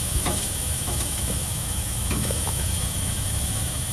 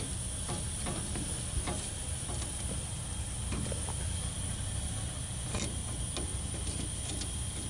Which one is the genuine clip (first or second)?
second